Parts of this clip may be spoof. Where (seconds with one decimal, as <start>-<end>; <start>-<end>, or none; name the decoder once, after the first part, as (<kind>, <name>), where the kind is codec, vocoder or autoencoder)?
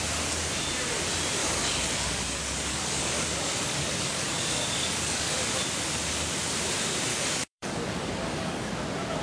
1.4-5.5 (codec, DAC); 7.1-8.7